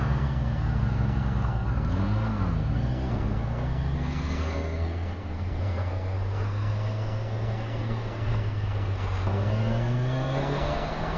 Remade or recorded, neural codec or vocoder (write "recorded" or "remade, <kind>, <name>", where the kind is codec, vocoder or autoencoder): remade, codec, SNAC